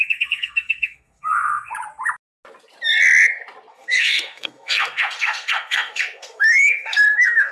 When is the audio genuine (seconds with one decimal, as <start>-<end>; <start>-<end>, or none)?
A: 1.7-3.7